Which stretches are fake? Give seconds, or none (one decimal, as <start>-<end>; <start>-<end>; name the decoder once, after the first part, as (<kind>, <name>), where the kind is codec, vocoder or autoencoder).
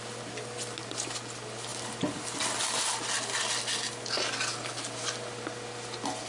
none